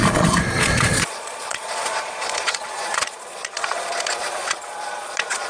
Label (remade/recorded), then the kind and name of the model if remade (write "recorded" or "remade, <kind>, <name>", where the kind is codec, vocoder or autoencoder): remade, vocoder, Vocos